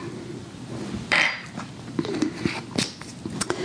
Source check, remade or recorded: recorded